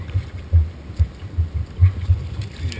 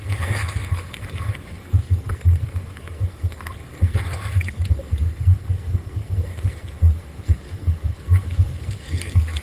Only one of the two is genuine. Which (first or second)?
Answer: first